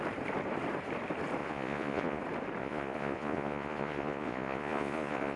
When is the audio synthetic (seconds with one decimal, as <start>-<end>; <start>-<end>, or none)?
1.4-2.2; 2.6-5.4